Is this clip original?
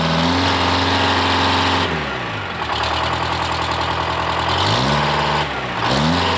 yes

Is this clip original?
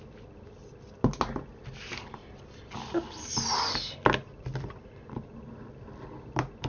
yes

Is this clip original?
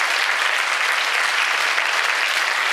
yes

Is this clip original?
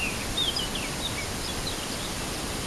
yes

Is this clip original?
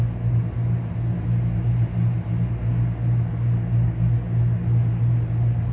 yes